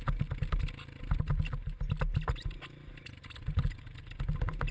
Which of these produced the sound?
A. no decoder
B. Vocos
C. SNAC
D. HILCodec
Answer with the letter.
A